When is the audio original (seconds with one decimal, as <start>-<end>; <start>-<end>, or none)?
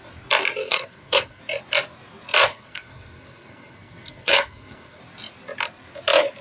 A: 0.0-0.6; 1.4-2.5; 5.0-6.4